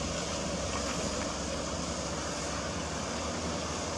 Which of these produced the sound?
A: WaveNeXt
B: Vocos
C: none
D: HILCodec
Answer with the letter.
C